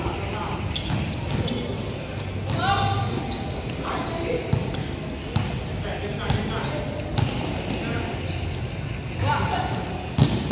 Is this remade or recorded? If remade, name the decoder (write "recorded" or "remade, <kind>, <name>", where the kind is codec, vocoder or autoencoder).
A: recorded